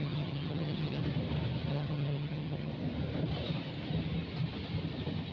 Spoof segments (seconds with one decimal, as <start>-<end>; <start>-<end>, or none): 0.0-1.0; 1.7-2.7